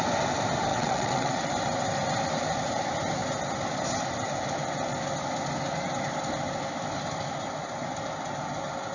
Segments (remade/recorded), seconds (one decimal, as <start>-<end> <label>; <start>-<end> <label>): 0.0-0.7 recorded; 0.7-1.5 remade; 1.5-8.9 recorded